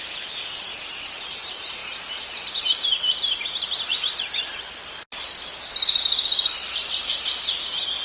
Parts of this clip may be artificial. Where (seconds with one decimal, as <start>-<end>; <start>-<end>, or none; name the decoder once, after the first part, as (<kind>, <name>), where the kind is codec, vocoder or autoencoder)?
0.0-1.8 (vocoder, BigVGAN v2); 6.0-8.0